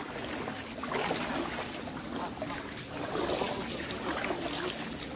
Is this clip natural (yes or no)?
yes